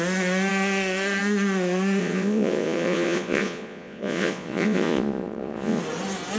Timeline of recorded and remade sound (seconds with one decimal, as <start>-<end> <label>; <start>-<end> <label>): 0.0-2.0 recorded; 2.0-5.8 remade; 5.8-6.4 recorded